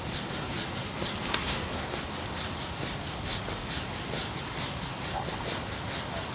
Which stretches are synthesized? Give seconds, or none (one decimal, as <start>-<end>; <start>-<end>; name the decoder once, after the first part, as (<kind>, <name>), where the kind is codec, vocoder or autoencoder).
1.3-2.0 (codec, SNAC)